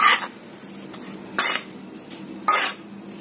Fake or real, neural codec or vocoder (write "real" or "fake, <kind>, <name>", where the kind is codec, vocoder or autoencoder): real